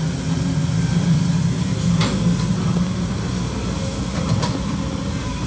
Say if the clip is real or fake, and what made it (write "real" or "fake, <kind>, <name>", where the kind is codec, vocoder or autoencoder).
real